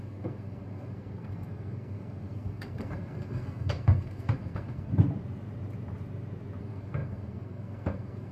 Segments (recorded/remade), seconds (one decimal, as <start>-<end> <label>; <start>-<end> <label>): 0.0-4.9 remade; 4.9-6.6 recorded; 6.6-8.3 remade

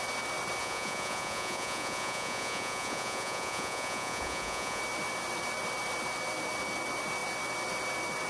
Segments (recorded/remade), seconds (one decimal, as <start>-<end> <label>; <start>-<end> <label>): 0.0-0.6 recorded; 0.6-4.8 remade; 4.8-8.3 recorded

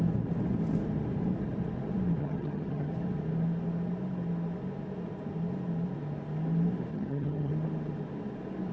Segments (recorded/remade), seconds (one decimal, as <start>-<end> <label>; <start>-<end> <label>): 0.0-2.2 recorded; 2.2-2.9 remade; 2.9-6.9 recorded; 6.9-7.5 remade; 7.5-8.7 recorded

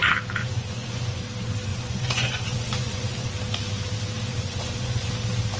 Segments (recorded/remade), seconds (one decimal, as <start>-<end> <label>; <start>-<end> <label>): 0.0-0.4 recorded; 0.4-1.2 remade; 1.2-1.7 recorded; 1.7-3.3 remade; 3.3-4.3 recorded; 4.3-5.1 remade; 5.1-5.6 recorded

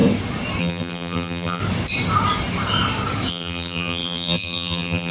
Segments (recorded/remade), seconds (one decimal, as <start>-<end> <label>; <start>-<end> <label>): 0.0-0.6 recorded; 0.6-1.6 remade; 1.6-3.3 recorded; 3.3-5.1 remade

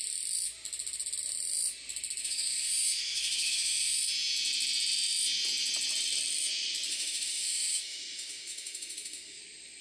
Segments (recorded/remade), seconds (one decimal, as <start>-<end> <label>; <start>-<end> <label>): 0.0-2.2 recorded; 2.2-4.0 remade; 4.0-6.9 recorded; 6.9-9.4 remade; 9.4-9.8 recorded